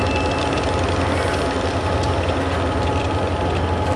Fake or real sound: real